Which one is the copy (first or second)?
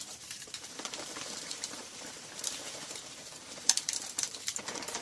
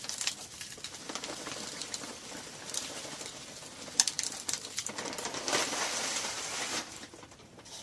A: first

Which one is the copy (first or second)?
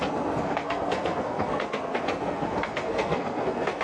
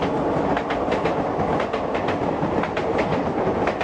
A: first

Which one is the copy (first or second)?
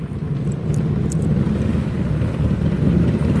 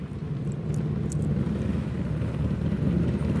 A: first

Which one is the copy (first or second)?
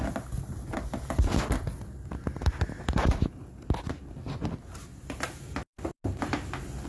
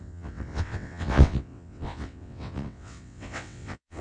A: second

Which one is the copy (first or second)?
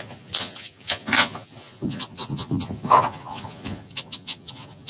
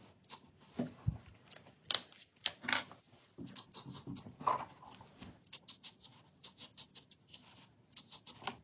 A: first